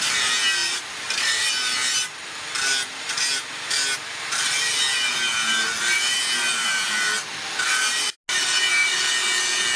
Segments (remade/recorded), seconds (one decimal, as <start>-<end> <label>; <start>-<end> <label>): 0.0-0.6 recorded; 0.6-1.5 remade; 1.5-9.8 recorded